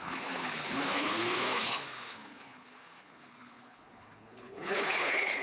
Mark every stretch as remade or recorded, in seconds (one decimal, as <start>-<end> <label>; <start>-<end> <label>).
0.0-5.4 remade